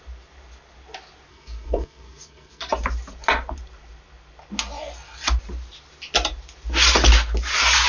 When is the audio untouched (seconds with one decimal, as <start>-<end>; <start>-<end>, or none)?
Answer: 0.0-1.3; 2.7-7.9

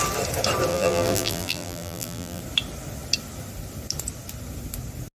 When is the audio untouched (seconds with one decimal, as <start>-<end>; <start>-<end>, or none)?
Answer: 0.0-0.7; 2.4-5.2

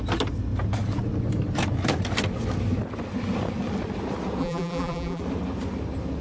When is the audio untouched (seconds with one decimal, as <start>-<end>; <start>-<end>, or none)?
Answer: 0.0-4.4; 5.2-6.2

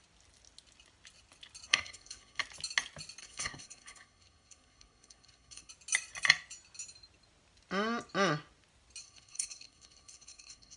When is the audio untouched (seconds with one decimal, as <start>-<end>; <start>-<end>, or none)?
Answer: 0.0-1.7; 2.4-3.2; 5.7-9.0